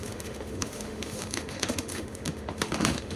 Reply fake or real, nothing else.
fake